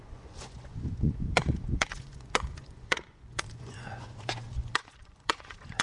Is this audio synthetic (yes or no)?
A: yes